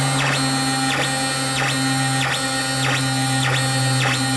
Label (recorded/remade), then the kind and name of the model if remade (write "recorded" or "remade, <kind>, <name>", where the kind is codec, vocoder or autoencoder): recorded